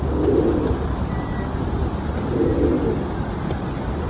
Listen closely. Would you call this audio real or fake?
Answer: real